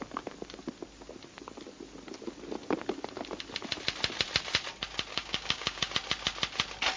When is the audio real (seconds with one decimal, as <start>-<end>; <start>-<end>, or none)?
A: 0.0-5.1; 5.9-7.0